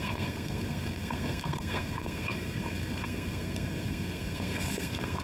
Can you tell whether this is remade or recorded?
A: remade